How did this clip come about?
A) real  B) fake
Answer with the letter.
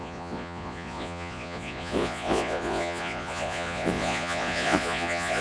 B